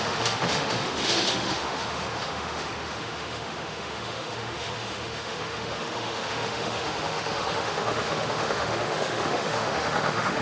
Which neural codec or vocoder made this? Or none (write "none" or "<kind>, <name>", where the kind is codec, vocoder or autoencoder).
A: autoencoder, DAC-VAE